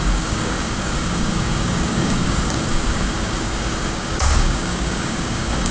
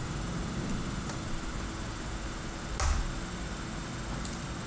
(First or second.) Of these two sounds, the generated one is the first